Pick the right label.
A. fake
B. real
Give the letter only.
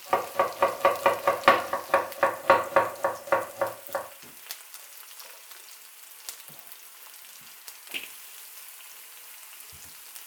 B